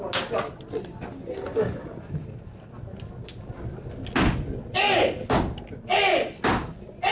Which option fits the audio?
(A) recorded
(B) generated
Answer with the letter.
A